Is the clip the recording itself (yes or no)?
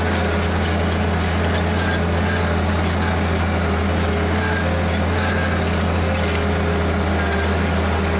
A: yes